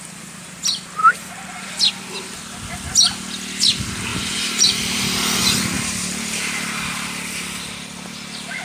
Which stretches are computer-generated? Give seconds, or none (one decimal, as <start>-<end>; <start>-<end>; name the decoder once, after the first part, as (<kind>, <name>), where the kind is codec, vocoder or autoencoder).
1.0-1.9 (vocoder, BigVGAN v2); 4.1-5.7